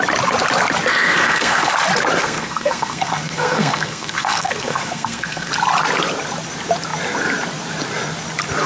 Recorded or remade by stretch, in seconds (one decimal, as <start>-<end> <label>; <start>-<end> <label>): 0.0-0.9 recorded; 0.9-1.7 remade; 1.7-2.2 recorded; 2.2-5.5 remade; 5.5-8.7 recorded

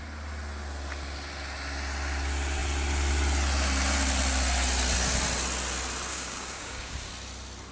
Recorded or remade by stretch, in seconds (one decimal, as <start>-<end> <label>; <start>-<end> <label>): 0.0-6.1 recorded; 6.1-7.1 remade; 7.1-7.7 recorded

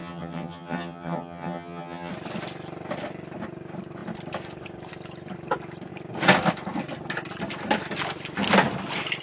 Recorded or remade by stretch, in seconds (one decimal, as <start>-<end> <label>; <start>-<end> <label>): 0.0-2.1 remade; 2.1-9.2 recorded

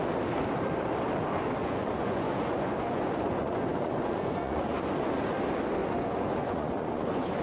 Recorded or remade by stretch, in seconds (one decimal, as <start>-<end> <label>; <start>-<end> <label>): 0.0-1.6 recorded; 1.6-5.1 remade; 5.1-5.8 recorded; 5.8-7.4 remade

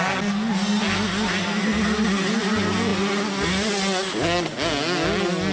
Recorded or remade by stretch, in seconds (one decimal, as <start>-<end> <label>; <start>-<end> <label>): 0.0-5.5 recorded

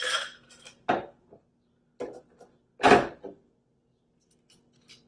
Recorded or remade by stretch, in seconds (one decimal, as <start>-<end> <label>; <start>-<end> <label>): 0.0-5.1 recorded

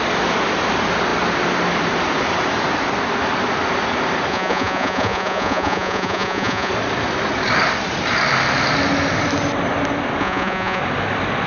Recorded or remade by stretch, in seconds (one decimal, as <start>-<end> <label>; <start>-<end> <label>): 0.0-4.3 recorded; 4.3-6.7 remade; 6.7-10.2 recorded; 10.2-10.8 remade; 10.8-11.5 recorded